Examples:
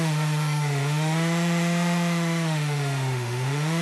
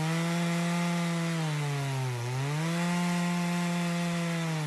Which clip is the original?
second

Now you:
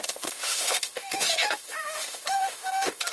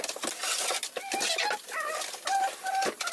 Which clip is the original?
second